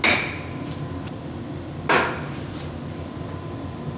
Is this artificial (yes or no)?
no